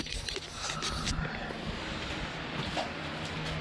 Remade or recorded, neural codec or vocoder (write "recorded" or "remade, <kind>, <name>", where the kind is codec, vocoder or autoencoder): recorded